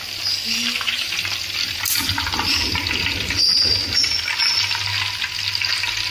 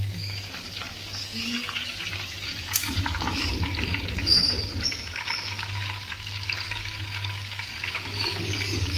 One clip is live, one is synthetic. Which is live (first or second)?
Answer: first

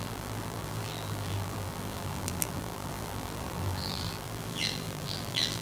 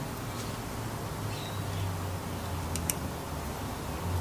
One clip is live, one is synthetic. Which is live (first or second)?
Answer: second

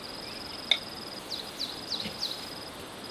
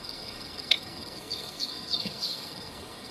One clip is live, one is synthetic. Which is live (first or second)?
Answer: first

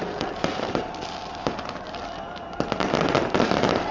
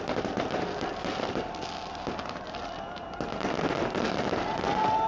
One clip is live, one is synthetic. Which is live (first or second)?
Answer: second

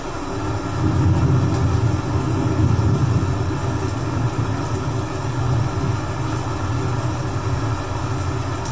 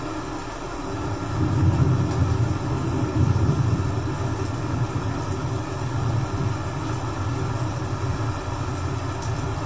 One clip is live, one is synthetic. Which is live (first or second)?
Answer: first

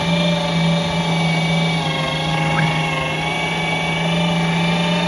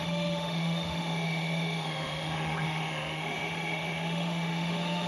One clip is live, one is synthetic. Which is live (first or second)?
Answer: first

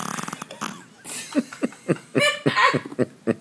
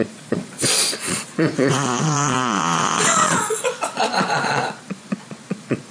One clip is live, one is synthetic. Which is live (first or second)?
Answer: first